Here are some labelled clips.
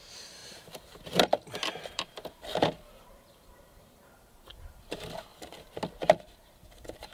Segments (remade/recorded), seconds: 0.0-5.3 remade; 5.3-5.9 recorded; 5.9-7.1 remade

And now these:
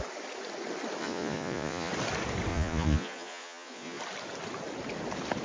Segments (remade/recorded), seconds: 0.0-1.0 recorded; 1.0-1.9 remade; 1.9-2.5 recorded; 2.5-4.0 remade; 4.0-5.4 recorded

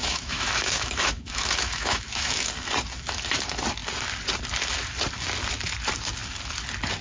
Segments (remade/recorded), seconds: 0.0-2.5 remade; 2.5-7.0 recorded